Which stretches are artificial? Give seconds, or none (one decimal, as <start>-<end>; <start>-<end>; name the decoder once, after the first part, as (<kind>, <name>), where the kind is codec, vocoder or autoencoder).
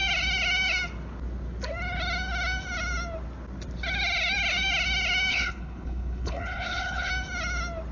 5.3-7.1 (codec, HILCodec)